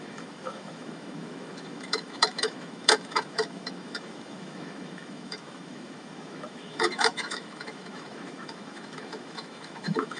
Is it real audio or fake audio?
fake